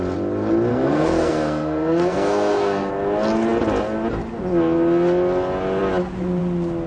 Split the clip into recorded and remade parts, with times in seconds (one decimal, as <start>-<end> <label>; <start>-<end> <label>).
0.0-0.7 recorded; 0.7-2.9 remade; 2.9-6.9 recorded